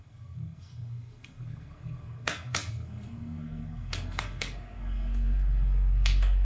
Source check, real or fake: fake